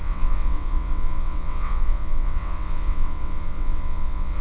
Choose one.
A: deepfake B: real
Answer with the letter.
A